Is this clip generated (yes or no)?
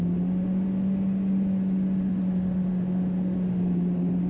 no